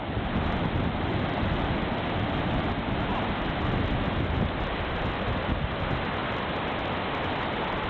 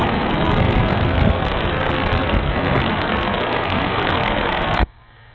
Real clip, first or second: first